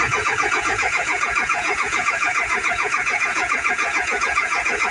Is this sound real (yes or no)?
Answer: no